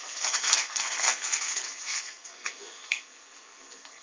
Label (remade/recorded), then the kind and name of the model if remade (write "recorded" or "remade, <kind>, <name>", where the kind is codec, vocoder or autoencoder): remade, codec, SNAC